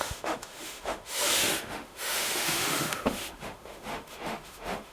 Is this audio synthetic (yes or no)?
yes